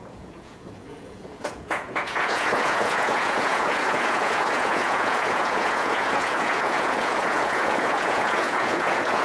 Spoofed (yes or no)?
yes